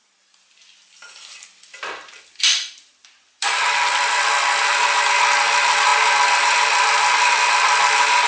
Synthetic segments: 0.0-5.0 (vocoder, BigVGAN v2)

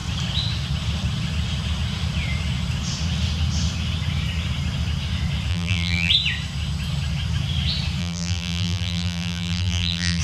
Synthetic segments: 5.5-6.1 (vocoder, BigVGAN v2); 8.0-10.2

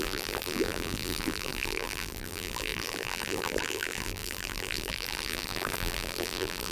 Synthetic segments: 0.0-6.7 (vocoder, BigVGAN v2)

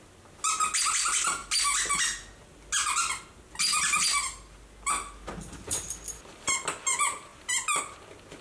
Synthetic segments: none

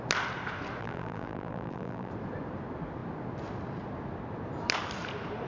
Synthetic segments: 0.8-2.1 (vocoder, BigVGAN v2)

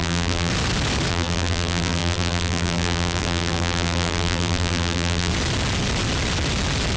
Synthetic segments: 0.0-0.5 (vocoder, BigVGAN v2); 1.1-5.3

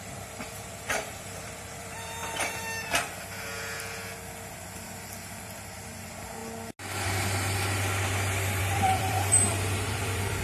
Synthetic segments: 0.0-2.2 (vocoder, BigVGAN v2); 4.5-6.4; 8.6-10.4